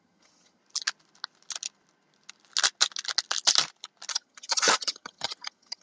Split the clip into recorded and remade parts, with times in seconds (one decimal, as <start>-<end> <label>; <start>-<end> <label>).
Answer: 0.0-0.6 remade; 0.6-4.1 recorded; 4.1-5.8 remade